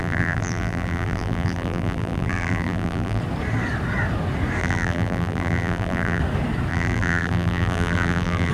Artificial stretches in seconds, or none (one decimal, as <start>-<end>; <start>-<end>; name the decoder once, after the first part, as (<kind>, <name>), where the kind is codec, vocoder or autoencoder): 0.0-3.2 (vocoder, BigVGAN v2); 4.6-6.2; 6.7-8.5